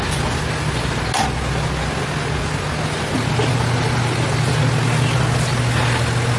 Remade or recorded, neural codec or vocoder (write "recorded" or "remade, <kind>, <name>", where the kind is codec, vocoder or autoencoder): recorded